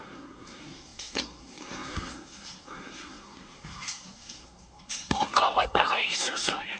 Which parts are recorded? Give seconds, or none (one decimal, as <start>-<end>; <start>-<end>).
none